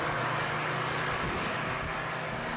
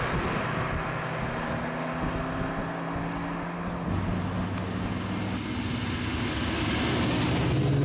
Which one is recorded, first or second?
second